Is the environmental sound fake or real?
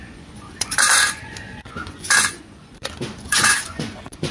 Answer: fake